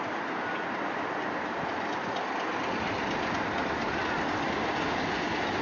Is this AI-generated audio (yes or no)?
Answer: no